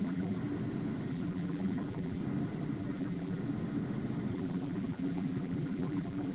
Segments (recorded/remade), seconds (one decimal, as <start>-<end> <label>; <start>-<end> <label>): 0.0-0.4 remade; 0.4-1.1 recorded; 1.1-2.2 remade; 2.2-2.8 recorded; 2.8-3.4 remade; 3.4-4.3 recorded; 4.3-6.3 remade